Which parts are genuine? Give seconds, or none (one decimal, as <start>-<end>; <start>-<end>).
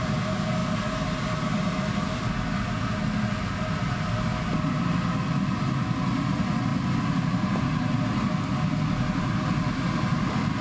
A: 0.0-10.6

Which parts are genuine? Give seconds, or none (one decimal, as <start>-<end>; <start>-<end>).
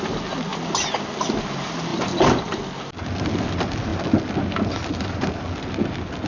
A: 0.0-6.3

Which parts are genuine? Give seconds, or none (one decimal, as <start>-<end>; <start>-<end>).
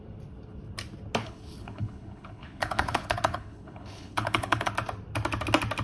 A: 0.0-1.2; 4.7-5.8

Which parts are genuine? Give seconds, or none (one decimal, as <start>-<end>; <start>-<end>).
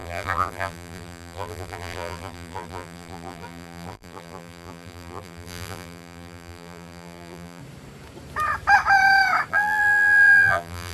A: 7.6-9.5